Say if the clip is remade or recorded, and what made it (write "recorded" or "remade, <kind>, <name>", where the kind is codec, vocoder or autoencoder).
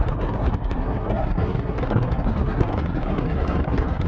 remade, codec, SNAC